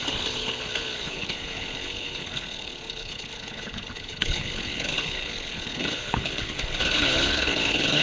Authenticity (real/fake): fake